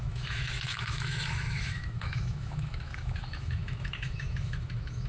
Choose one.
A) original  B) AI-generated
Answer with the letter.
B